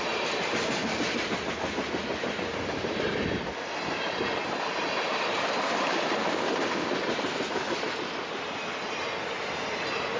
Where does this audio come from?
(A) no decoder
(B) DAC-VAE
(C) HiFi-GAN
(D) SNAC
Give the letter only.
A